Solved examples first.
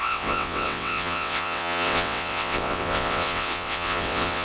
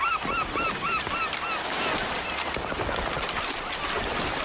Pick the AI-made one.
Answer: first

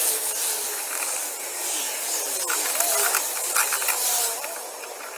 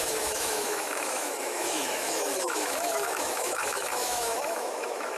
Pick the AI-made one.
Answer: second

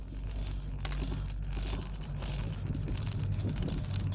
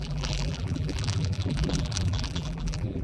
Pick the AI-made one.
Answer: second